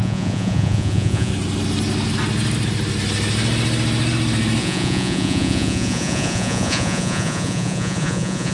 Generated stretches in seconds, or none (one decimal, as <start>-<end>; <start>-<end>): 0.0-1.3; 4.6-8.5